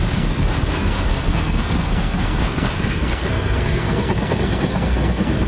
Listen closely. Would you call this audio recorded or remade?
remade